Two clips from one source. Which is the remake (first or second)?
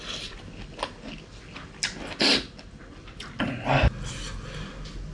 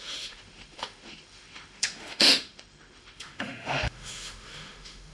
second